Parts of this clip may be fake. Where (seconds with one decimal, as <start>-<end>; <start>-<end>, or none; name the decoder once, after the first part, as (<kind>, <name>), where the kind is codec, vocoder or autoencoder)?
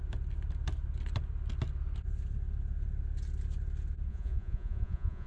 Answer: 4.1-5.3 (vocoder, Vocos)